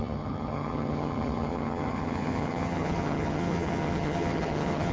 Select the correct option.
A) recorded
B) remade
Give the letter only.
B